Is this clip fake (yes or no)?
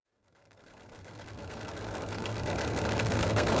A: yes